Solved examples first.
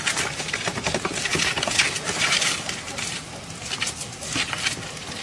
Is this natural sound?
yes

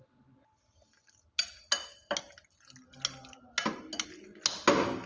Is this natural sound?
yes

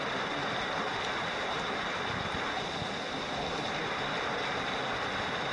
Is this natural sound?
yes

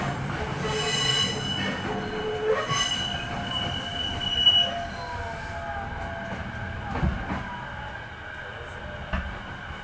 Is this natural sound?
yes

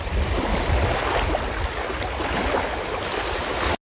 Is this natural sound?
yes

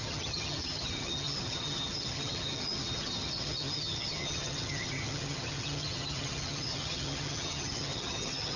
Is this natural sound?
no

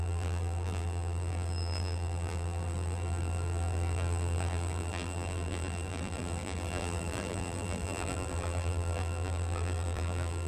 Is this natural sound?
no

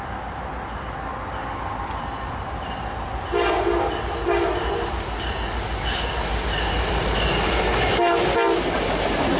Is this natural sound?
yes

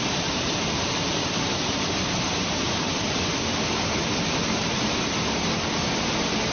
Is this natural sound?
no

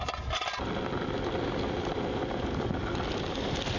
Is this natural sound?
yes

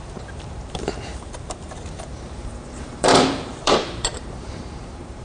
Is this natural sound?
no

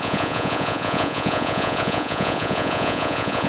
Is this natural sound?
no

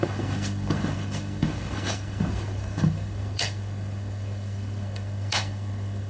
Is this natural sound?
no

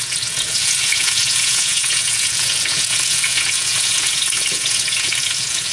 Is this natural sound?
no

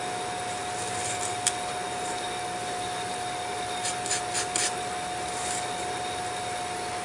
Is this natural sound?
yes